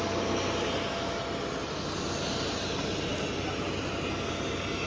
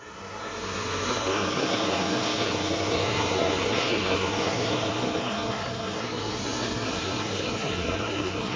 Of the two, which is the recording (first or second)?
first